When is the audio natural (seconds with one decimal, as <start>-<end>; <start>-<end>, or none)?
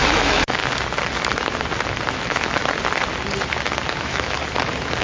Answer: 0.6-2.1; 2.6-3.9; 4.4-5.0